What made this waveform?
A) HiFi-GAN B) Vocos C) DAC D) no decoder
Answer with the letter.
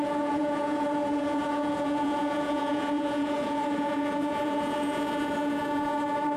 B